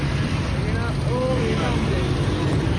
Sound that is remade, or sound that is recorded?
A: recorded